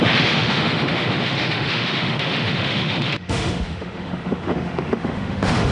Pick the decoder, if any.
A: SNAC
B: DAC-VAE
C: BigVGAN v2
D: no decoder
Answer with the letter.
B